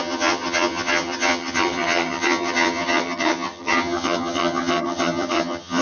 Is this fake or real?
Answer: fake